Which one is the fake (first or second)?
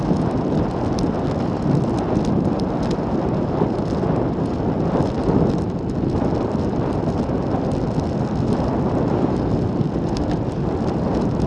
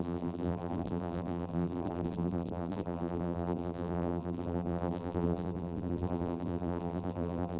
second